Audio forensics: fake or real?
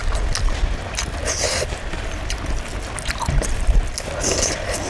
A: real